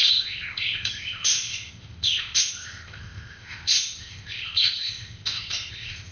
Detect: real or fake fake